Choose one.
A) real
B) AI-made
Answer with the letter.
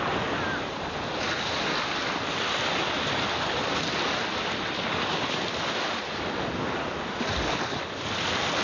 A